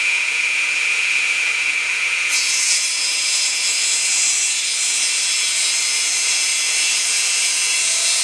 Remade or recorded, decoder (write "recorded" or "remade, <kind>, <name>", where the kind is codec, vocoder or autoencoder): remade, vocoder, Vocos